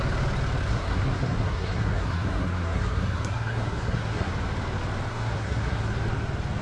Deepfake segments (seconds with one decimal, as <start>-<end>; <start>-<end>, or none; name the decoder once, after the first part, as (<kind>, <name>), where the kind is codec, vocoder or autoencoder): 0.7-4.3 (codec, SNAC); 5.1-5.8